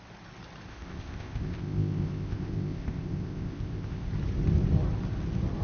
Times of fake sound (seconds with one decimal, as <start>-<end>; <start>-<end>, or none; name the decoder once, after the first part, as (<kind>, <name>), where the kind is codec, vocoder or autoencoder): 0.7-4.1 (codec, ZipCodec)